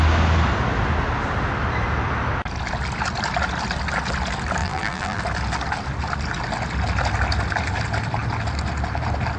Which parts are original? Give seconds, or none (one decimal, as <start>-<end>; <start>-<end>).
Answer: 0.0-4.6; 5.2-9.4

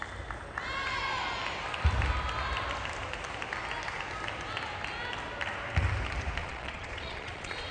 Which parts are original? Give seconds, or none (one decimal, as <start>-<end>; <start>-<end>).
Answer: 0.0-6.4

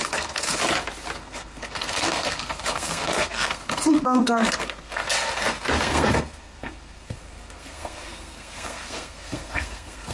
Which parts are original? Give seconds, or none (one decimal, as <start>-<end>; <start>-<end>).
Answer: 0.6-1.2

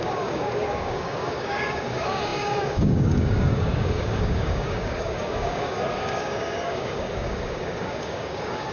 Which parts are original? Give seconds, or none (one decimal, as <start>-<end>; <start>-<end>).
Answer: none